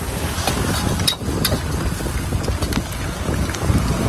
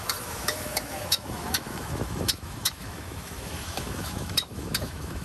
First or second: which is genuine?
first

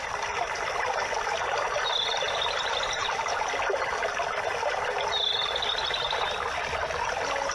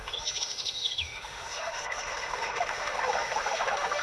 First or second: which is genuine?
first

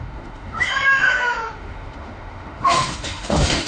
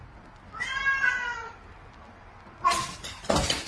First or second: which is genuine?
second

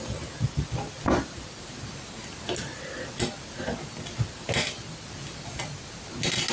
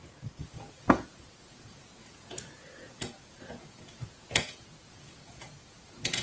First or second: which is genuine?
first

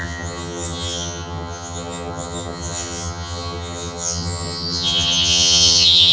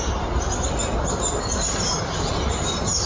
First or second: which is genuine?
second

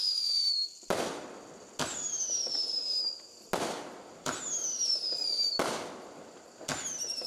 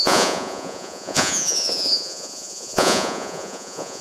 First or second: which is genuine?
first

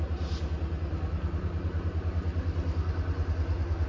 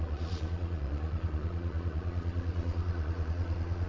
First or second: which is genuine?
first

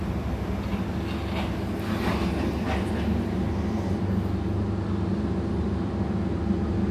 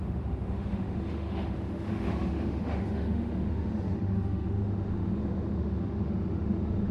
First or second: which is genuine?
first